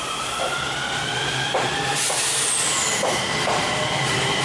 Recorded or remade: remade